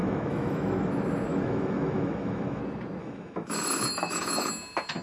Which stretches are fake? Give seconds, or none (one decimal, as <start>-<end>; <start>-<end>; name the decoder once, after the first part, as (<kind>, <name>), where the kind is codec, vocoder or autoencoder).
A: 0.0-0.9 (autoencoder, DAC-VAE); 1.3-2.6; 3.0-4.5